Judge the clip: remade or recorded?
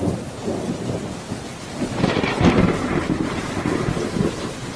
remade